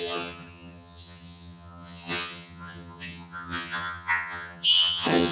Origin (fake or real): fake